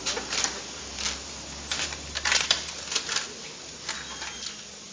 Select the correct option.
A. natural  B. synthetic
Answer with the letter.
A